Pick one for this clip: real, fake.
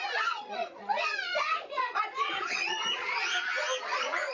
fake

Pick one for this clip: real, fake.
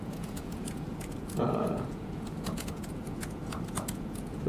fake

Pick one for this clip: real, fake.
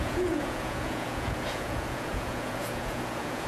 fake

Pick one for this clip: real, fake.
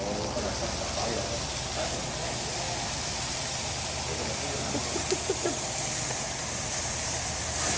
real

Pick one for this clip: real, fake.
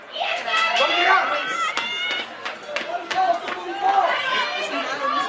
real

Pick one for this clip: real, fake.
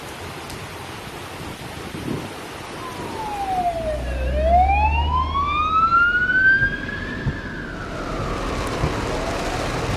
real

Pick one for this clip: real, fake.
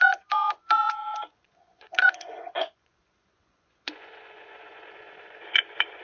fake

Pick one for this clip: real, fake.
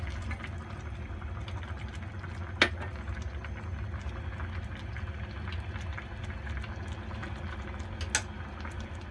real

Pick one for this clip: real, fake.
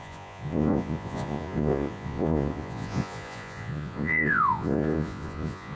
fake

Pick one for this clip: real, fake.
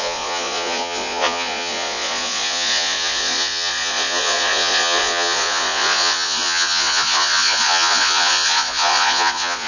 fake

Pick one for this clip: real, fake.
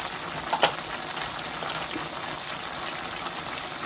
real